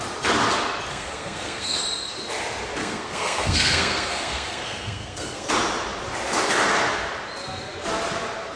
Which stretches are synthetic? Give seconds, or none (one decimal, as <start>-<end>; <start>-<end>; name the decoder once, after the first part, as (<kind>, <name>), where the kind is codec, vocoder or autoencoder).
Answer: 0.9-1.8 (codec, SNAC); 2.8-5.5